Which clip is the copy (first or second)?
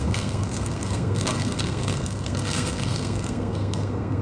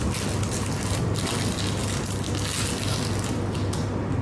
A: first